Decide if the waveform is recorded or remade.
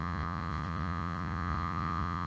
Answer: remade